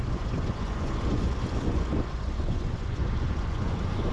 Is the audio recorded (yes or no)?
no